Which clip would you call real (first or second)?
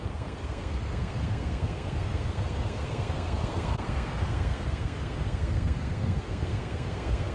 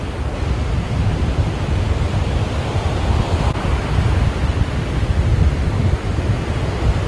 second